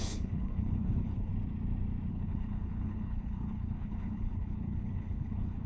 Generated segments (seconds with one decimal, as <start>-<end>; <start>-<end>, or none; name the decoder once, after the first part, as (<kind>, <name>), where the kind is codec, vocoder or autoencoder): 0.0-1.3 (codec, HILCodec); 2.1-5.7